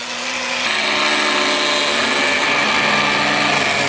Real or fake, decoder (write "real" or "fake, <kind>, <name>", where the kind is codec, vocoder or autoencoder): real